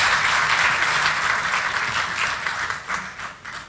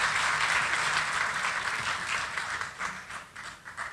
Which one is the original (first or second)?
first